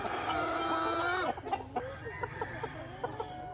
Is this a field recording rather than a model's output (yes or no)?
yes